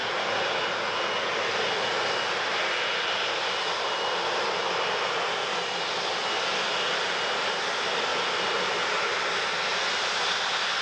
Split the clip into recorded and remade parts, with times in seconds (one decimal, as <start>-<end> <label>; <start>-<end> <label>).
0.0-10.8 recorded